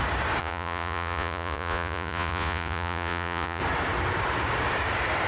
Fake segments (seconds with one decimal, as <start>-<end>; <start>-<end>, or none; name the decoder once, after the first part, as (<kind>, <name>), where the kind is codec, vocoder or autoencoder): 0.4-3.6 (vocoder, Vocos)